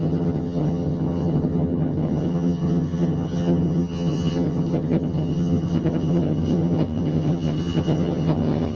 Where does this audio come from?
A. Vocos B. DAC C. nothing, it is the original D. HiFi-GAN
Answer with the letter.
D